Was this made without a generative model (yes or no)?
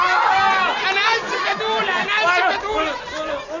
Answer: yes